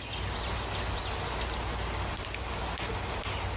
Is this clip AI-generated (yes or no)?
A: no